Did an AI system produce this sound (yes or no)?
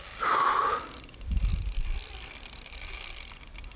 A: no